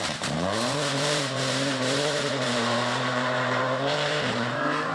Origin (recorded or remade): remade